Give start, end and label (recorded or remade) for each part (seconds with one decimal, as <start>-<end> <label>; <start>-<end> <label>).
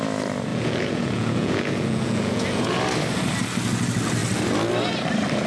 0.0-0.5 recorded; 0.5-2.8 remade; 2.8-5.5 recorded